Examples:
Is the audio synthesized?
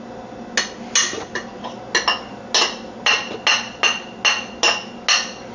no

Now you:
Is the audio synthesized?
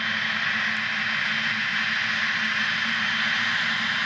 no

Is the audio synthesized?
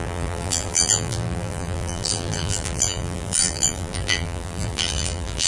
yes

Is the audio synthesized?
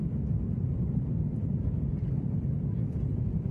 no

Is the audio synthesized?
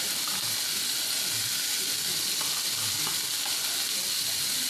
no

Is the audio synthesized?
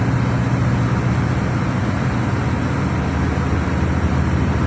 no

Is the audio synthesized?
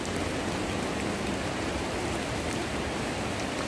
no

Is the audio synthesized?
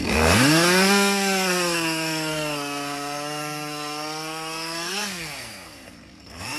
yes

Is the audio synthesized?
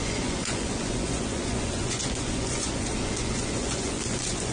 yes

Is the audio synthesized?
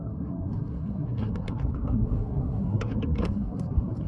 yes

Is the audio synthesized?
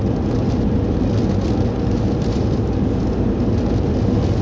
no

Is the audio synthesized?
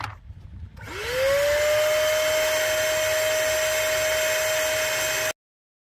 no